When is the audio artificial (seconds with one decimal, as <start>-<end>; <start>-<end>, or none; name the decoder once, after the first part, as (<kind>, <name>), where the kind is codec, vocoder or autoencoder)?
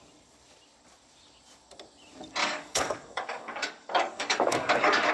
2.4-5.1 (codec, DAC)